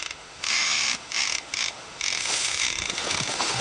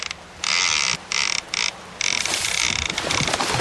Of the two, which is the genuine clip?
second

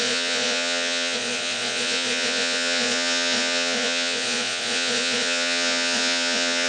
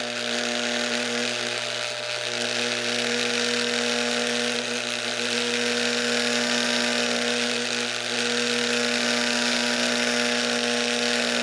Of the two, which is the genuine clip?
second